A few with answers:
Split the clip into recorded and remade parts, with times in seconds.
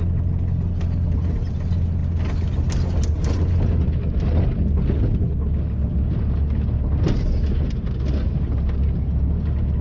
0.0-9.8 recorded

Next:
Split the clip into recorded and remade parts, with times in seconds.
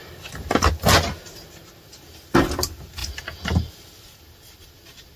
0.0-0.7 remade; 0.7-5.2 recorded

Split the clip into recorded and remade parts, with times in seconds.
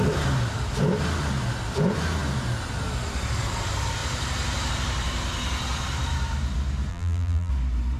0.0-6.9 recorded; 6.9-7.5 remade; 7.5-8.0 recorded